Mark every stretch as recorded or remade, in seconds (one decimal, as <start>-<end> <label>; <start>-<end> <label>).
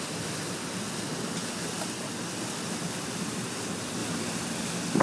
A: 0.0-5.0 recorded